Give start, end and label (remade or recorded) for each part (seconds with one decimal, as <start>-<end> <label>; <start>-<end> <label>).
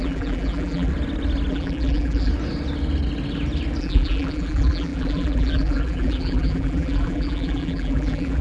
0.0-0.9 remade; 0.9-1.5 recorded; 1.5-2.3 remade; 2.3-3.8 recorded; 3.8-8.4 remade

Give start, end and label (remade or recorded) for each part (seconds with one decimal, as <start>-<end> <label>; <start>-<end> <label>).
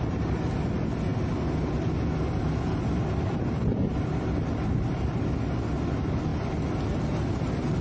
0.0-7.8 recorded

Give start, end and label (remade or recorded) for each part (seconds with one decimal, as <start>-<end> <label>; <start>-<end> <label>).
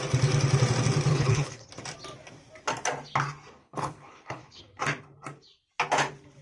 0.0-1.1 recorded; 1.1-1.7 remade; 1.7-3.6 recorded; 3.6-4.6 remade; 4.6-6.4 recorded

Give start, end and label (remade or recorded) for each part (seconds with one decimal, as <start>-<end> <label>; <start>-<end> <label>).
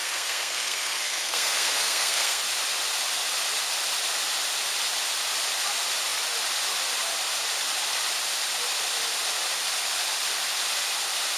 0.0-2.4 remade; 2.4-11.4 recorded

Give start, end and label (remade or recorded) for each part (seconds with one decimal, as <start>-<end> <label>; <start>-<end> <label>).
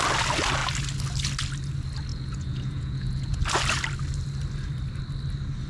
0.0-2.1 recorded; 2.1-3.4 remade; 3.4-5.7 recorded